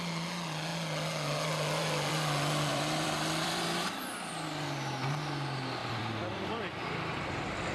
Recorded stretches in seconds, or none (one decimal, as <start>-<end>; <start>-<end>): 0.0-2.7; 4.3-5.8; 6.6-7.7